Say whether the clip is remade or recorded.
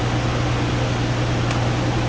recorded